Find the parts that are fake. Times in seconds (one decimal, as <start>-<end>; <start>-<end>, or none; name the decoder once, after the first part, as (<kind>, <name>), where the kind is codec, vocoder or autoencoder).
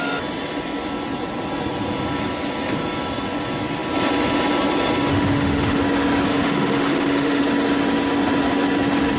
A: 5.1-5.8 (autoencoder, DAC-VAE); 6.3-7.4